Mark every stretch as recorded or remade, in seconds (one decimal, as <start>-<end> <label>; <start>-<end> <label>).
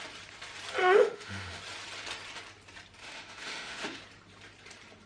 0.0-0.8 recorded; 0.8-1.6 remade; 1.6-3.0 recorded; 3.0-4.0 remade; 4.0-5.1 recorded